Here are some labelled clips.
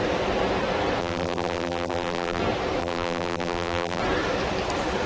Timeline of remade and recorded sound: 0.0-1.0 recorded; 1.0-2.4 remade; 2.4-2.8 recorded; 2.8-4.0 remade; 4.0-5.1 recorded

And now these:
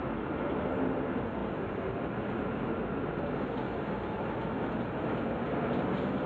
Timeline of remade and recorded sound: 0.0-6.3 recorded

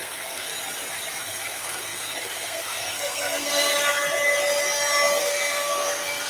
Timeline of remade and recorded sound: 0.0-0.5 remade; 0.5-1.2 recorded; 1.2-3.7 remade; 3.7-5.2 recorded; 5.2-6.3 remade